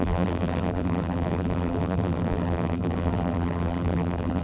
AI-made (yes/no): yes